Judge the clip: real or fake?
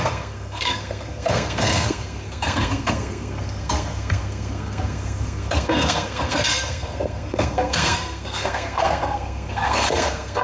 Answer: fake